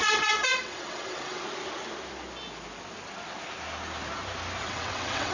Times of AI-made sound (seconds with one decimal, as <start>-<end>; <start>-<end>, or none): 0.0-1.4; 4.6-5.3